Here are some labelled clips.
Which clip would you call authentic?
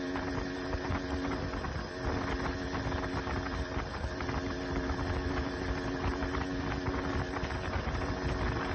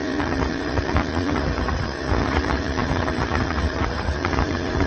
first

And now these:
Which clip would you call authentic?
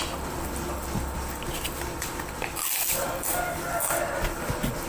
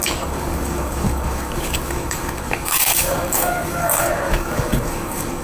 first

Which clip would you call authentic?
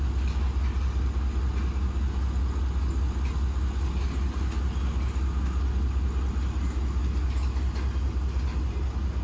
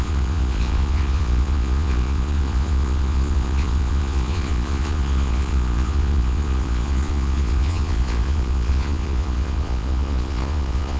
first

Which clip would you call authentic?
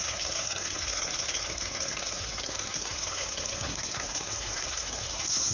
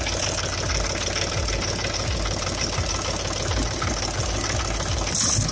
second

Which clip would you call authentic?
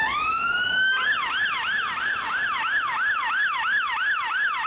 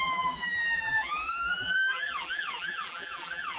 first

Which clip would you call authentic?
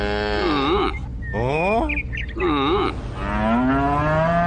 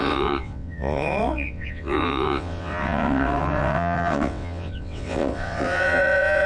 first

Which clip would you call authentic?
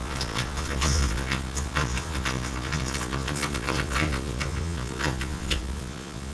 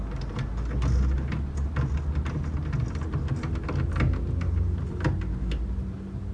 second